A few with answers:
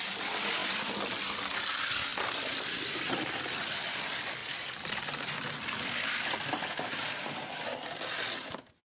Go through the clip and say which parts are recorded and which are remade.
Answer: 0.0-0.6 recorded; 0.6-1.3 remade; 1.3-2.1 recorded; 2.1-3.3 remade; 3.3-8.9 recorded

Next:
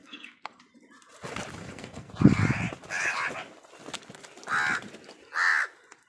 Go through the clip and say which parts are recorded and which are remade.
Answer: 0.0-0.6 remade; 0.6-1.6 recorded; 1.6-2.1 remade; 2.1-6.1 recorded

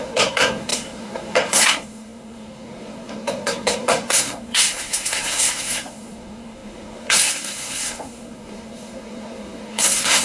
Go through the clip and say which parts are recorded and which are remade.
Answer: 0.0-10.2 remade

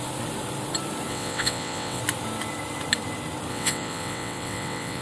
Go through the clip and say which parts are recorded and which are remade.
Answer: 0.0-1.1 recorded; 1.1-2.0 remade; 2.0-3.5 recorded; 3.5-5.0 remade

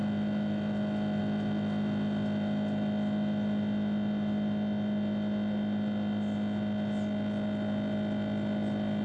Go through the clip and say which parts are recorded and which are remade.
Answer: 0.0-9.0 recorded